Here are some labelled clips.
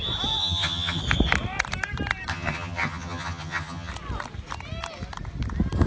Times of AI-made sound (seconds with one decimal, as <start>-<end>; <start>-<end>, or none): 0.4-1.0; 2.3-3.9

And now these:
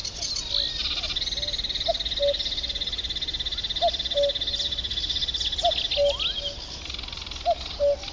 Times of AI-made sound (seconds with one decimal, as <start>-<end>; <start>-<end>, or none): none

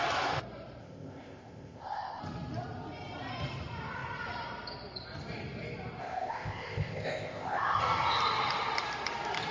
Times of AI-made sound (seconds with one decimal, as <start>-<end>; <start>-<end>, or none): 0.8-2.2; 6.0-7.8